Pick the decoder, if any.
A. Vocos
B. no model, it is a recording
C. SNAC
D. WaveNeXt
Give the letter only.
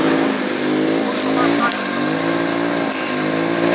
B